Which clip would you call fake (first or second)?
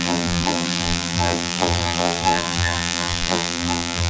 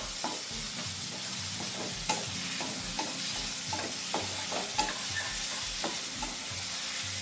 first